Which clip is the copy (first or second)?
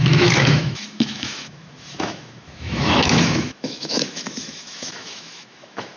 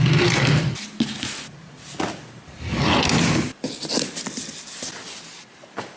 first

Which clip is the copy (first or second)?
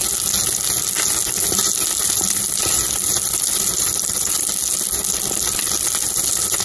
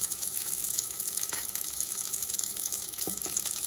second